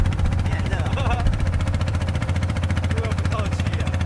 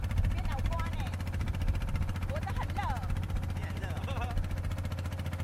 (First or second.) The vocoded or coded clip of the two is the first